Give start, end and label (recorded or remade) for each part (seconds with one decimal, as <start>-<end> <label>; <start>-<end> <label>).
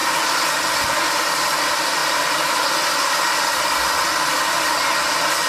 0.0-2.0 recorded; 2.0-5.5 remade